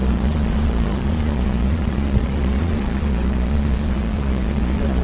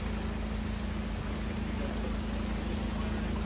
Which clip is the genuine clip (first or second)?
second